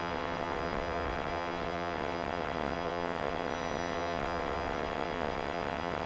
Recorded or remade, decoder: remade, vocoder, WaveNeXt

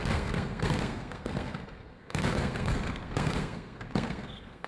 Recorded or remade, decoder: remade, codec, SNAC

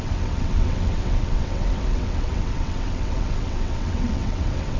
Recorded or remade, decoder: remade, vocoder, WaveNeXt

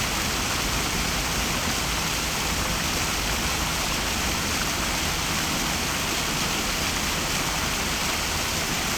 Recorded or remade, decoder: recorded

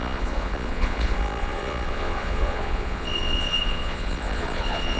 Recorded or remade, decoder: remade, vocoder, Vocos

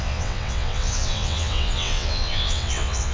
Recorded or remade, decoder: remade, vocoder, WaveNeXt